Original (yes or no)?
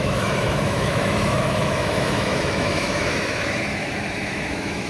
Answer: no